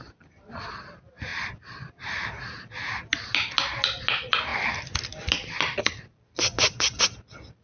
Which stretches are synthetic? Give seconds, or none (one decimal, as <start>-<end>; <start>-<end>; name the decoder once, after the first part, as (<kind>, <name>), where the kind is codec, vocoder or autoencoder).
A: none